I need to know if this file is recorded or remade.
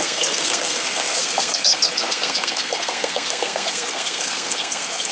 remade